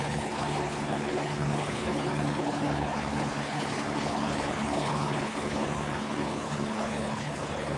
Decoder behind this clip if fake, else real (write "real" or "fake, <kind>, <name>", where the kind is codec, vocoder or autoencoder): fake, codec, HILCodec